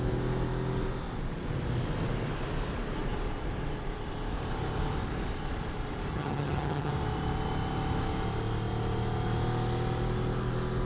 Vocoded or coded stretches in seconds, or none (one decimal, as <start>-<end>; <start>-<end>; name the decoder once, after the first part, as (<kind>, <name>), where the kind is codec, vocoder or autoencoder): 6.1-6.9 (vocoder, HiFi-GAN)